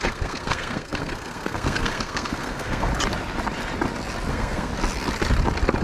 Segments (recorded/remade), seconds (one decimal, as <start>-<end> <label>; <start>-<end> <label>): 0.0-2.9 remade; 2.9-4.3 recorded; 4.3-4.7 remade; 4.7-5.8 recorded